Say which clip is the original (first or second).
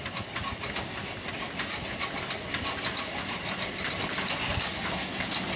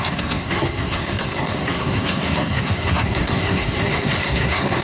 first